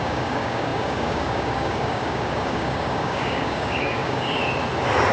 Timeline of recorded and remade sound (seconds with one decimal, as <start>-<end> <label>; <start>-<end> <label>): 0.0-4.4 remade; 4.4-5.1 recorded